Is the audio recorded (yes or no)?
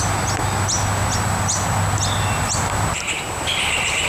yes